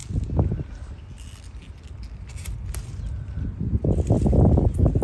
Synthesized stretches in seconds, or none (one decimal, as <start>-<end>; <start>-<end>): none